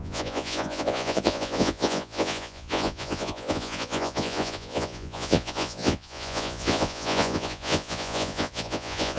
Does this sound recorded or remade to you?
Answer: remade